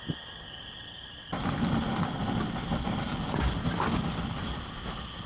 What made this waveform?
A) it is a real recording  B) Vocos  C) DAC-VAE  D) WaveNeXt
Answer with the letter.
A